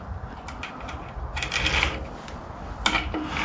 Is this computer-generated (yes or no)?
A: no